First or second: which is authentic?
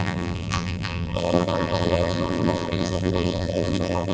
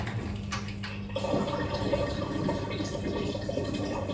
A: second